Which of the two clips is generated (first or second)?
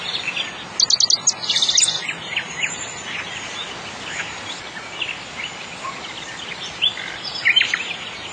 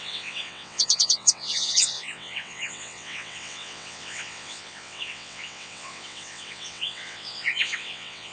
second